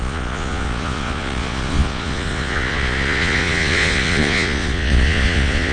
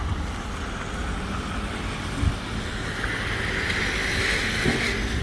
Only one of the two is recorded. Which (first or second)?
second